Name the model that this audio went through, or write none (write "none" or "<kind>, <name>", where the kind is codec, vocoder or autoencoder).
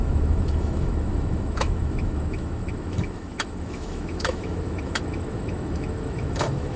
autoencoder, DAC-VAE